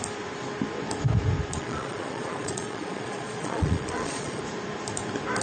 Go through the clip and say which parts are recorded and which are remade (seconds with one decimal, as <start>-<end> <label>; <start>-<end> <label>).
0.0-1.5 recorded; 1.5-4.4 remade; 4.4-5.4 recorded